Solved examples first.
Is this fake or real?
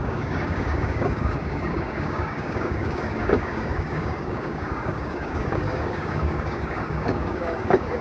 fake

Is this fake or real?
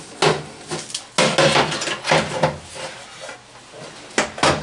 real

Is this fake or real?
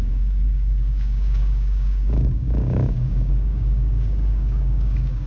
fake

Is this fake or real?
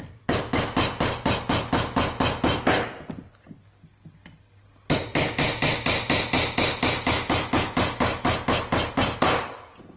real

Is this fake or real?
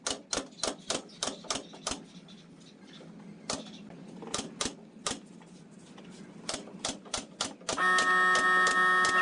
real